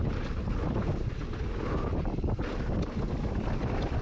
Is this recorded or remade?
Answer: recorded